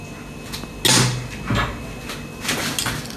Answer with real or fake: real